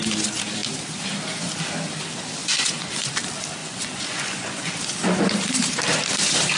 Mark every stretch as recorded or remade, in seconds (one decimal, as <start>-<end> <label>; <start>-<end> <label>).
0.0-2.4 recorded; 2.4-3.1 remade; 3.1-3.6 recorded; 3.6-4.8 remade; 4.8-6.6 recorded